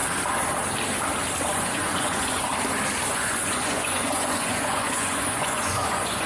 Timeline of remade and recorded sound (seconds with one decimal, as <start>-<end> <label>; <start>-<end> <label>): 0.0-1.5 recorded; 1.5-2.5 remade; 2.5-3.1 recorded; 3.1-6.3 remade